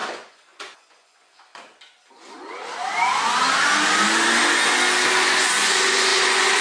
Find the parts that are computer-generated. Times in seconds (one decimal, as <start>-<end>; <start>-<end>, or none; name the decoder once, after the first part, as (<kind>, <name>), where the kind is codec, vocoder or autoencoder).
0.0-1.5 (vocoder, Vocos); 5.1-6.6